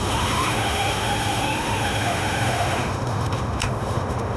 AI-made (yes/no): yes